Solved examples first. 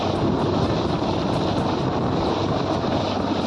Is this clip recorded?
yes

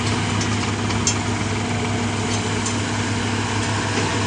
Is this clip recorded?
yes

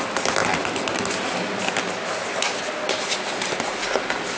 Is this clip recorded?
yes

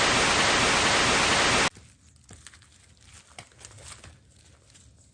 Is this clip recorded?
yes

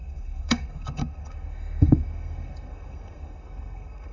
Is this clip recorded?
no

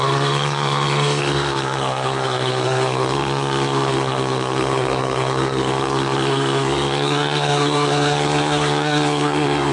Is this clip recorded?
no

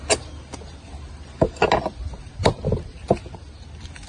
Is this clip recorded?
yes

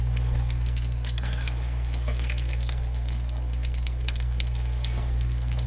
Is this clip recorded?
no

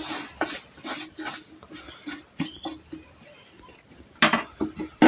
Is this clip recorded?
yes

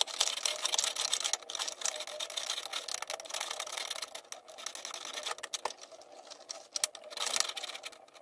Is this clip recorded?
yes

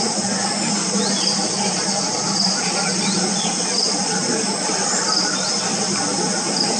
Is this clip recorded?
yes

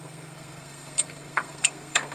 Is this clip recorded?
no